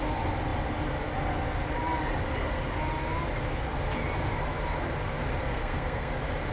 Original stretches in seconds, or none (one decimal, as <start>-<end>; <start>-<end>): 0.0-5.3; 6.1-6.5